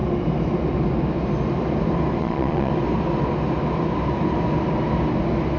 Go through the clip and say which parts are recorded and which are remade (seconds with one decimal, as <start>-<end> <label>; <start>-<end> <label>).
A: 0.0-2.2 recorded; 2.2-2.7 remade; 2.7-5.6 recorded